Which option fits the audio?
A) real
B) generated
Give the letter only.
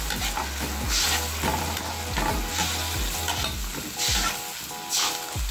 A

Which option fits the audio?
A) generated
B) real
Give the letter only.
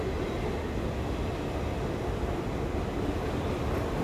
B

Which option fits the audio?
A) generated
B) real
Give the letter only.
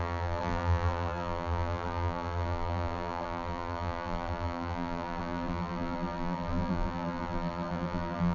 A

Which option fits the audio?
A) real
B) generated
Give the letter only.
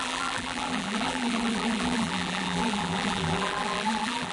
B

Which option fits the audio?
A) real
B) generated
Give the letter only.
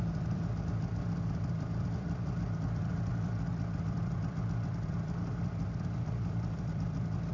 B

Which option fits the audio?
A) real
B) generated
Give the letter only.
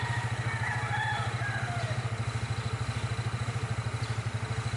A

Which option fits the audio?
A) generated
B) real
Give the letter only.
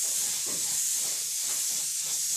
B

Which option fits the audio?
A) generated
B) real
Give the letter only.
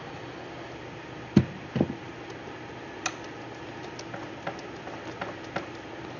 B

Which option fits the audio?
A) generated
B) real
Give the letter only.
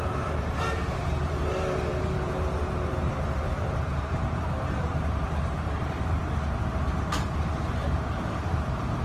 A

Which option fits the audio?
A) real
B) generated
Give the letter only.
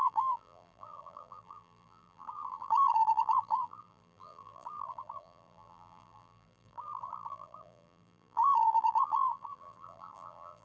B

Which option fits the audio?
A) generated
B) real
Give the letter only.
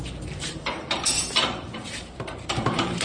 A